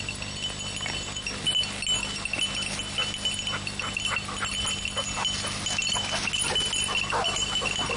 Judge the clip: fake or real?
real